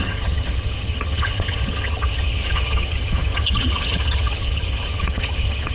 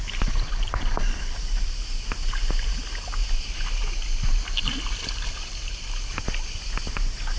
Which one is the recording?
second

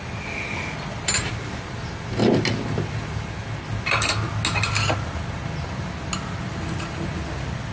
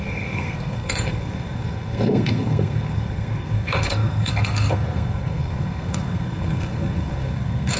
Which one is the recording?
first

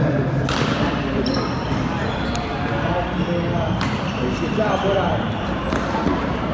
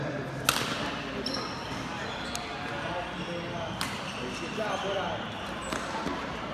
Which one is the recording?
second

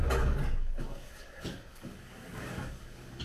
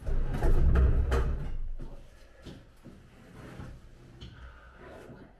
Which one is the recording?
second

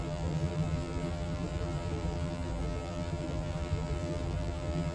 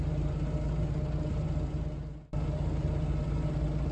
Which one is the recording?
second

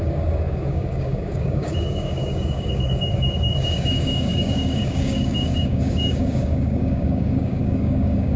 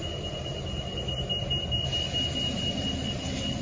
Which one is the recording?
second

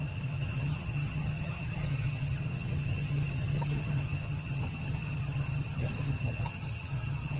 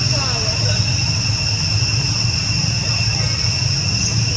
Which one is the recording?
second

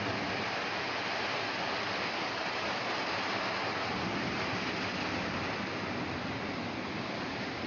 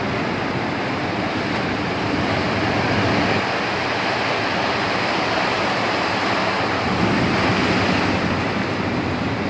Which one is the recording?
first